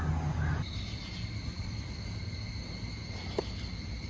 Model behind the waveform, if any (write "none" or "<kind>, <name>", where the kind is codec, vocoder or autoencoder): none